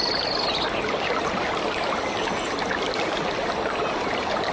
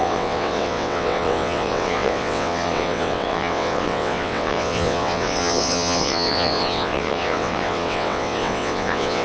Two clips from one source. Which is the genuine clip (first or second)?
first